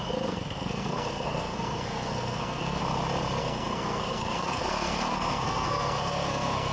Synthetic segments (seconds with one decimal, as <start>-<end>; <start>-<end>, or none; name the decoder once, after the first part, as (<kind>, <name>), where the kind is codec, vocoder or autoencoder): 0.0-2.8 (codec, SNAC); 3.4-6.7